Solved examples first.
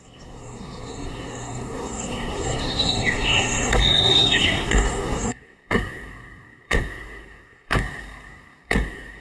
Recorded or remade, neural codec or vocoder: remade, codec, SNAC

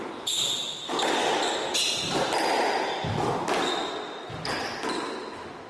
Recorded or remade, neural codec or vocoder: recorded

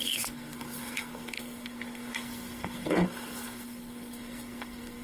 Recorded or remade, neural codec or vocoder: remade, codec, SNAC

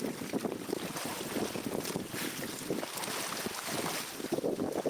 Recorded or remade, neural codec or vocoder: recorded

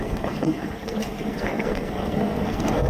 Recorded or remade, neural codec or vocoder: remade, codec, SNAC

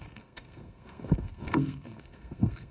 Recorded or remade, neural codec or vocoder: remade, codec, SNAC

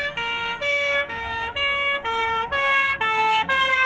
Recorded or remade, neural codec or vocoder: remade, codec, SNAC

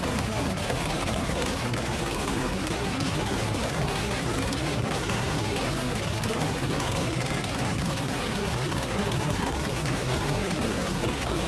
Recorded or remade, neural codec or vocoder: remade, codec, SNAC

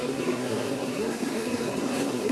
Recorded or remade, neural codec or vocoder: remade, codec, SNAC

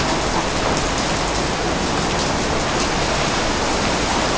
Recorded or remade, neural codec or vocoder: recorded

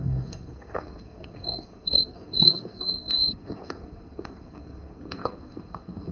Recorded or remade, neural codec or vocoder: remade, codec, SNAC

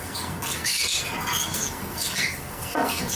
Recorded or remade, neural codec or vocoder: remade, codec, SNAC